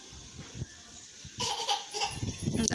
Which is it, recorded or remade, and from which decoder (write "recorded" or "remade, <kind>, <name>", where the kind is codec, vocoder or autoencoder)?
recorded